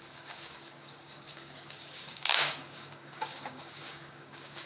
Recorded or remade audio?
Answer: remade